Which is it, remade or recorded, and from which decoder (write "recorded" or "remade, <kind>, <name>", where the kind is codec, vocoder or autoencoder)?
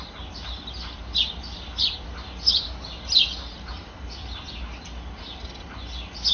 recorded